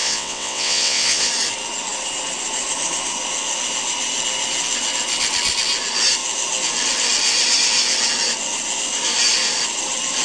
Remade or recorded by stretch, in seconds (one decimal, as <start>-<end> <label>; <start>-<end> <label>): 0.0-1.3 remade; 1.3-10.2 recorded